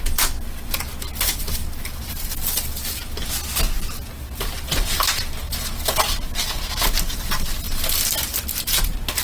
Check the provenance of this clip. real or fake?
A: real